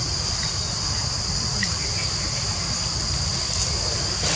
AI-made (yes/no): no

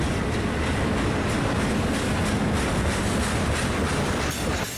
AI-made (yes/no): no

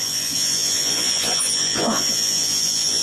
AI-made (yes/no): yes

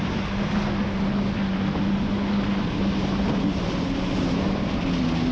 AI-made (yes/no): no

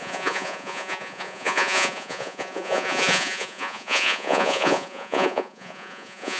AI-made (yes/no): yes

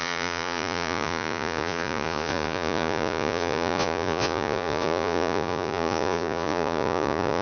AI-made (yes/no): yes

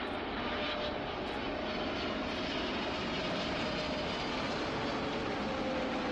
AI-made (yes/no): no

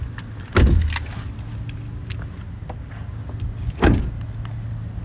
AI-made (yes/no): no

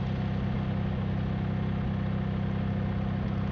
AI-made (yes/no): no